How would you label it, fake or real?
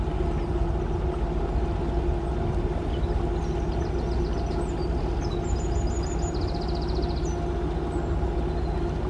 real